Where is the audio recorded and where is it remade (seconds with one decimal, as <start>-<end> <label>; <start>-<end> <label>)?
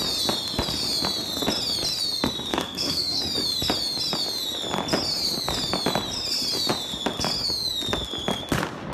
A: 0.0-2.5 recorded; 2.5-3.2 remade; 3.2-8.9 recorded